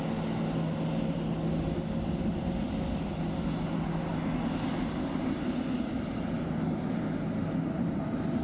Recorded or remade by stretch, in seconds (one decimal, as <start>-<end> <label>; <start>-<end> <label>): 0.0-8.4 recorded